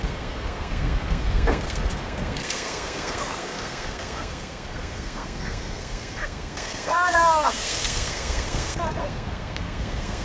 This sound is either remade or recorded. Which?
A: remade